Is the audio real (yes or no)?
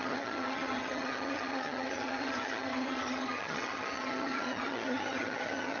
no